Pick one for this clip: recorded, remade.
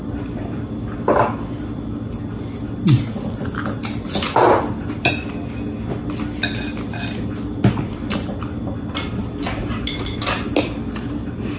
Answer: recorded